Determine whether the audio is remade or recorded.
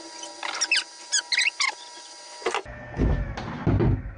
recorded